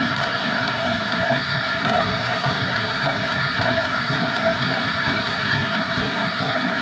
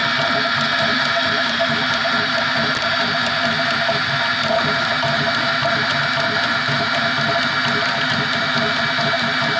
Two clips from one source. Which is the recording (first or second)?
second